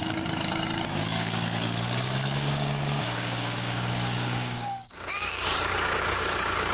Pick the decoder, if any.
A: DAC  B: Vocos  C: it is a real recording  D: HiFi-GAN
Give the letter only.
A